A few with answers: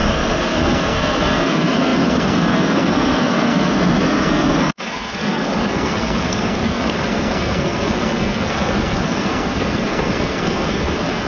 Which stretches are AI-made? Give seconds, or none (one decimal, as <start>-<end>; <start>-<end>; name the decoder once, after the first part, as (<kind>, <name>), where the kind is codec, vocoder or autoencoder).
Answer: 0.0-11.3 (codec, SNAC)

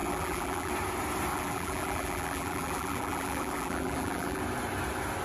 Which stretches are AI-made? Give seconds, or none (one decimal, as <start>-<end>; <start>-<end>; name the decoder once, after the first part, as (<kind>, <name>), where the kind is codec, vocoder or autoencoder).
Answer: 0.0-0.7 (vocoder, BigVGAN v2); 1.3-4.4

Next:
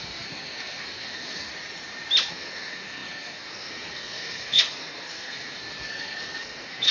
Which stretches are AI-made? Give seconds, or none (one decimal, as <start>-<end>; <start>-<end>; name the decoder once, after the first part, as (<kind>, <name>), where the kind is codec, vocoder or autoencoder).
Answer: 0.0-1.5 (codec, SNAC); 2.3-6.9

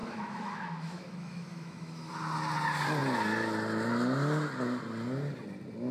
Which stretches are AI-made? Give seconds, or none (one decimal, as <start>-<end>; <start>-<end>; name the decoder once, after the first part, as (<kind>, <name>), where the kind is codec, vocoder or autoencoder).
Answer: 0.0-2.1 (autoencoder, DAC-VAE)

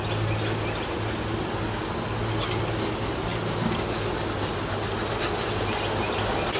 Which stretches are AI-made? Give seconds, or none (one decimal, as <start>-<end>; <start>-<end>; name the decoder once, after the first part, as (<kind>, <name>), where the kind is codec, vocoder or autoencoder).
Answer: none